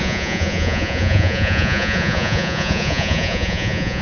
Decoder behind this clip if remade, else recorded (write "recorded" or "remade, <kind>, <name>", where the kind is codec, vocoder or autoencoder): remade, vocoder, Vocos